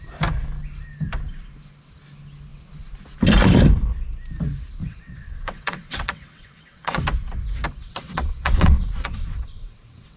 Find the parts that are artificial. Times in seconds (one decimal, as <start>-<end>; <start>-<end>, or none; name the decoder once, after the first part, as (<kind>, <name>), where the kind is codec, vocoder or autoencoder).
4.8-7.0 (vocoder, WaveNeXt); 7.8-10.2